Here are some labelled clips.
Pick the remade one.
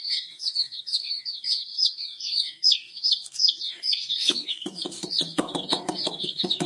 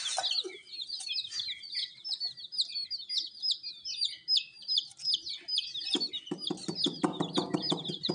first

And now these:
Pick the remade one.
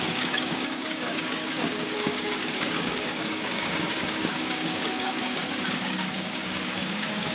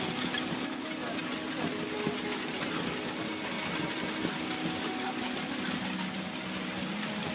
first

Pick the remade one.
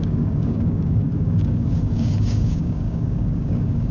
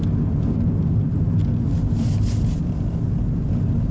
first